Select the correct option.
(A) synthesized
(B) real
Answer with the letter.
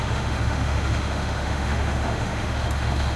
A